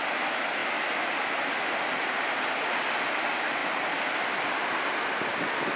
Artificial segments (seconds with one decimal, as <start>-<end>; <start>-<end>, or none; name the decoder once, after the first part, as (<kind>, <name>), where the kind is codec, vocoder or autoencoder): none